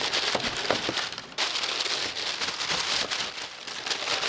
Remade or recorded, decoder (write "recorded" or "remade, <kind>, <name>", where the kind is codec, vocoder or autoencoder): recorded